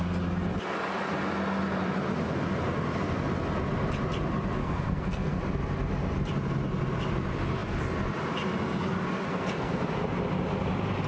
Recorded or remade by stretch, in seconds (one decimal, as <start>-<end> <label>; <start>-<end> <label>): 0.0-4.6 recorded; 4.6-5.4 remade; 5.4-9.3 recorded; 9.3-9.8 remade; 9.8-11.1 recorded